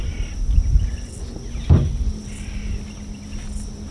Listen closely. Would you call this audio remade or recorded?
recorded